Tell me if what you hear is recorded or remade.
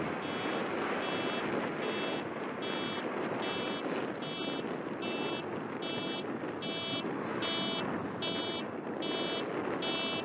recorded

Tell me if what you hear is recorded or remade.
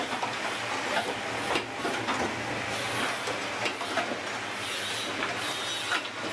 recorded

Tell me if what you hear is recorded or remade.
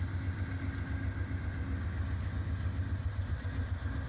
recorded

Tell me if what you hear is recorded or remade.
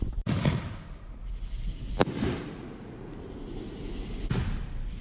recorded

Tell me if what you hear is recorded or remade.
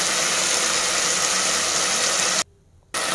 recorded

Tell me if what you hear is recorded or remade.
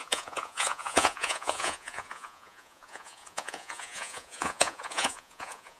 remade